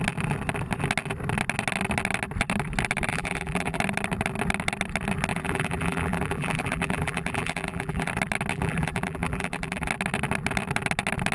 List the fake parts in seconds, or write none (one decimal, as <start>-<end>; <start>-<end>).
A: 3.1-3.8; 5.3-8.1; 8.5-9.9